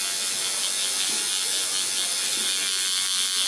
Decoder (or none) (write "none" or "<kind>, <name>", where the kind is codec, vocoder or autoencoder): none